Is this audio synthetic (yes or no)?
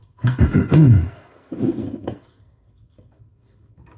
yes